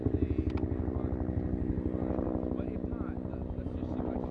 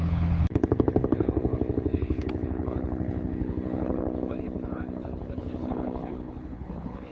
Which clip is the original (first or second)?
first